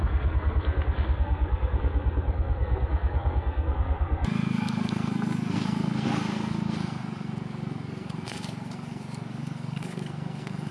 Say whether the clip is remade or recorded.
remade